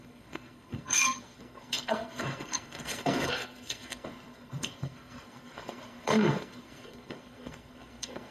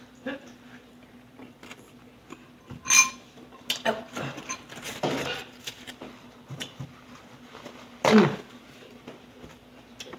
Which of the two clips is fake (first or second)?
first